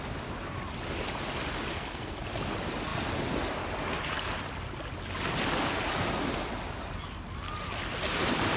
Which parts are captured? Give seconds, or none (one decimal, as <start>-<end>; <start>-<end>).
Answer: 0.0-1.7; 2.2-8.6